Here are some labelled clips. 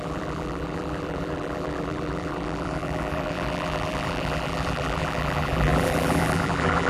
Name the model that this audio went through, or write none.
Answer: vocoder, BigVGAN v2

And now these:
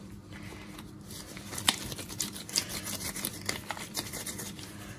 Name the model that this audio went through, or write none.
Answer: vocoder, BigVGAN v2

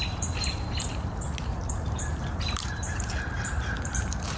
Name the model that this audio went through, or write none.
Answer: vocoder, BigVGAN v2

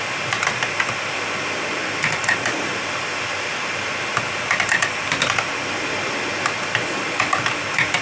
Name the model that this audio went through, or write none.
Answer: none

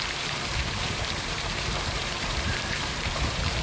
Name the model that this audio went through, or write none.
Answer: vocoder, BigVGAN v2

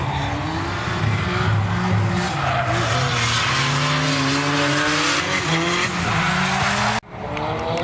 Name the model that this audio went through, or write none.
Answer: none